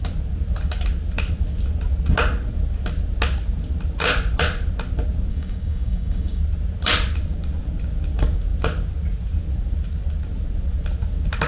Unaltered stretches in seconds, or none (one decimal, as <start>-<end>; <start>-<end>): 0.0-5.3; 6.4-11.5